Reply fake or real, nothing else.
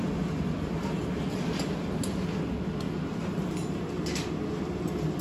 real